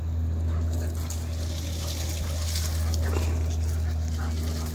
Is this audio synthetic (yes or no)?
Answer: no